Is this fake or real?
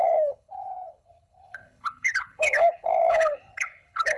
fake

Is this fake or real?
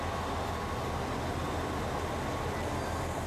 real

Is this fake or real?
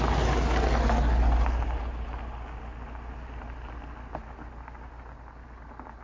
real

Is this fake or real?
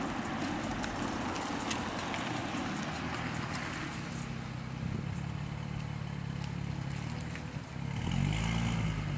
real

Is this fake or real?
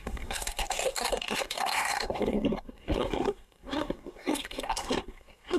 fake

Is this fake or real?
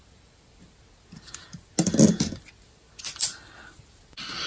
real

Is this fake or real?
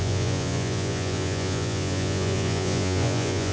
fake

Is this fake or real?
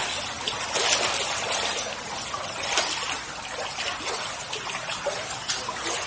real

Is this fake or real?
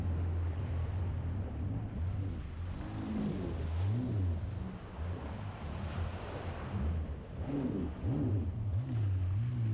real